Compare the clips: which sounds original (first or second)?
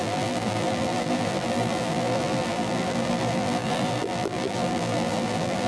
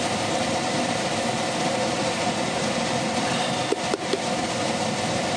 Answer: second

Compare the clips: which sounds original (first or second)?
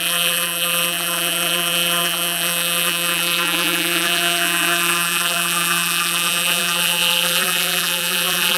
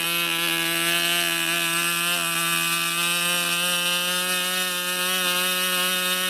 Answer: second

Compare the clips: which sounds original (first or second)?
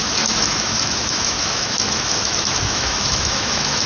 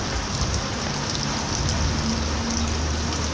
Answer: second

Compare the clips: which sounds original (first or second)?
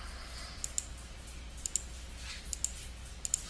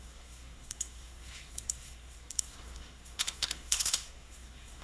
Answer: first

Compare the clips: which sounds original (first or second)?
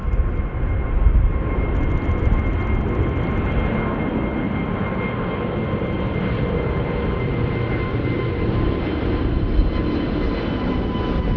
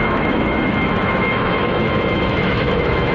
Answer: first